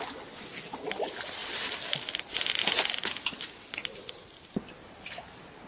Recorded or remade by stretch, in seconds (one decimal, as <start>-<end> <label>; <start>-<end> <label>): 0.0-1.4 recorded; 1.4-4.5 remade; 4.5-5.7 recorded